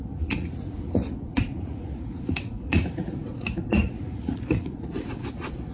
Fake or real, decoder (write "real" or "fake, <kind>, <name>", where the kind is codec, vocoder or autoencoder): fake, vocoder, Vocos